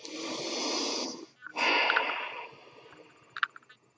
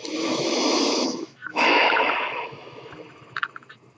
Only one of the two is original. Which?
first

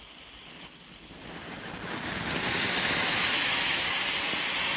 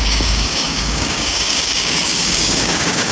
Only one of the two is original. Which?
first